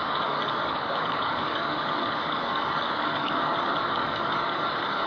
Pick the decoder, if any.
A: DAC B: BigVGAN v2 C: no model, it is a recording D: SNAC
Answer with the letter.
A